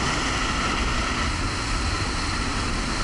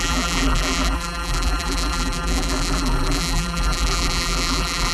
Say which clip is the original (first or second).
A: first